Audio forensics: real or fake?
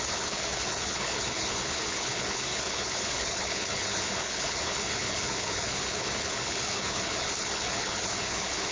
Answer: fake